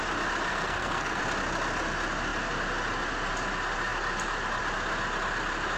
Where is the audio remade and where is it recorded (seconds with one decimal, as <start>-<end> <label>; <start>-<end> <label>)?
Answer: 0.0-0.5 recorded; 0.5-1.2 remade; 1.2-5.8 recorded